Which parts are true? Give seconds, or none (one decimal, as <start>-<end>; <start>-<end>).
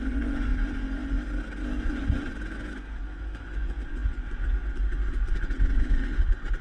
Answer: 0.5-1.8